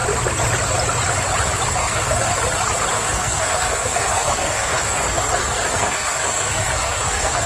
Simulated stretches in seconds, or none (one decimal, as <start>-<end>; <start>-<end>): 1.8-2.3; 2.9-7.5